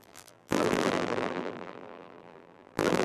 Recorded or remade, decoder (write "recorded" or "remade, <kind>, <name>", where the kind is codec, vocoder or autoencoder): remade, vocoder, BigVGAN v2